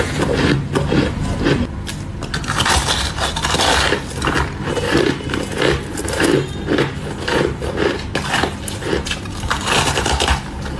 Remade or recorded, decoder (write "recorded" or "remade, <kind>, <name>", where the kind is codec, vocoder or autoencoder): recorded